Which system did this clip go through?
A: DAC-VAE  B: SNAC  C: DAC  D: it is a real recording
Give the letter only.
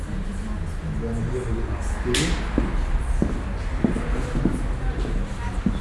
D